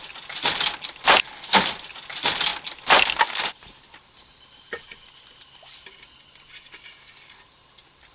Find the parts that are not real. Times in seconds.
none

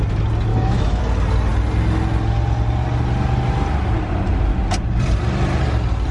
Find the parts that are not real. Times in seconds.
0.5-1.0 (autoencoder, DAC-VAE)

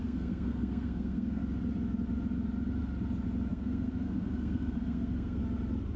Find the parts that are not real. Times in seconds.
0.0-1.4 (codec, SNAC); 3.5-5.4